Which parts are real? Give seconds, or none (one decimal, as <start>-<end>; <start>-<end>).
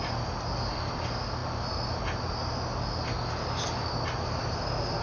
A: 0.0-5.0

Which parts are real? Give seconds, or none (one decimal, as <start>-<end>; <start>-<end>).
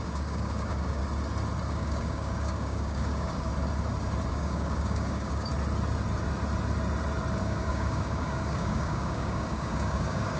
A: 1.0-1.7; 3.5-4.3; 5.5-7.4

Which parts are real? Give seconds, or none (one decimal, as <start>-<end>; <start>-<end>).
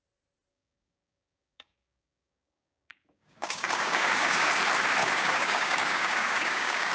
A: 0.0-0.5; 4.5-5.0